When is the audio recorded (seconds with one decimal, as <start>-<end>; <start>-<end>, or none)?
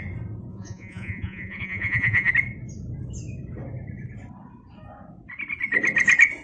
0.0-0.5; 2.3-6.4